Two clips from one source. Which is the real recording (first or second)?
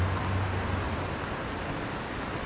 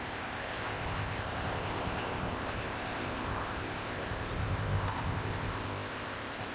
first